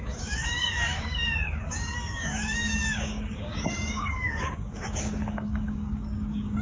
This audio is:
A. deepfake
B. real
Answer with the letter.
A